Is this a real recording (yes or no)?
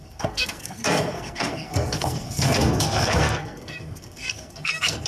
no